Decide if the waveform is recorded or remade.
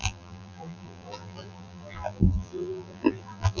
remade